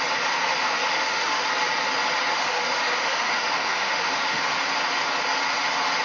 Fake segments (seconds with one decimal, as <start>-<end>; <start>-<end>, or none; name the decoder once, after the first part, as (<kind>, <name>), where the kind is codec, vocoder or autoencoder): 0.6-1.5 (autoencoder, DAC-VAE); 2.3-4.4